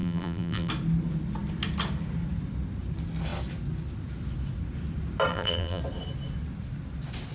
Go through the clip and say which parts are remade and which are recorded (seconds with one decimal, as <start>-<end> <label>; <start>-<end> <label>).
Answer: 0.0-0.7 remade; 0.7-5.3 recorded; 5.3-5.8 remade; 5.8-7.3 recorded